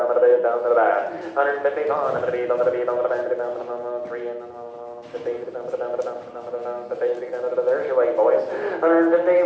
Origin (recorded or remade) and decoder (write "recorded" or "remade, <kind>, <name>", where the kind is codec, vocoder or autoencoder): recorded